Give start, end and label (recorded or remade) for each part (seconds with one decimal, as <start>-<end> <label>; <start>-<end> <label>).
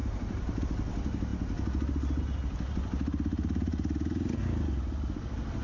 0.0-0.6 remade; 0.6-3.3 recorded; 3.3-4.4 remade; 4.4-5.6 recorded